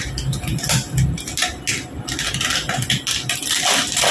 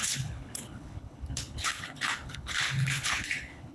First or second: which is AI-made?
second